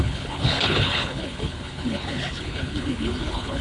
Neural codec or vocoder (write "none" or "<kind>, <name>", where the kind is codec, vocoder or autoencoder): codec, HILCodec